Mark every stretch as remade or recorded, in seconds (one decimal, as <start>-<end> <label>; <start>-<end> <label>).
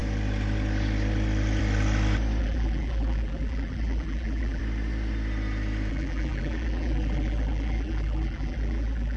0.0-2.4 recorded; 2.4-4.6 remade; 4.6-5.9 recorded; 5.9-9.2 remade